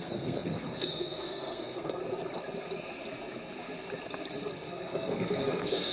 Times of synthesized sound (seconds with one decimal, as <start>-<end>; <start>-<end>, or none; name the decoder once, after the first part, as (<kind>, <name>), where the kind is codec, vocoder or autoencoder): 0.0-2.0 (codec, SNAC); 4.5-5.9